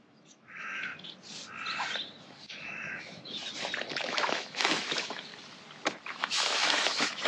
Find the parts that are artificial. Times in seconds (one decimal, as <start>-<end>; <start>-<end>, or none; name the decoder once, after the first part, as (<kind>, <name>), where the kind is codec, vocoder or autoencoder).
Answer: 0.0-0.9 (autoencoder, DAC-VAE); 2.2-3.4; 3.9-5.3; 6.1-7.3